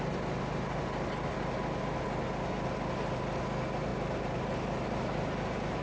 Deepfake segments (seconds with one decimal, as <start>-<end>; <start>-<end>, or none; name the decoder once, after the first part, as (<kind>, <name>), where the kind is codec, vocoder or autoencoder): none